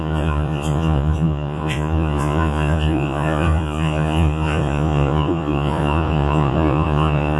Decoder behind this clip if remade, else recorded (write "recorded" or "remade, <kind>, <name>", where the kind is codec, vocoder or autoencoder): remade, vocoder, Vocos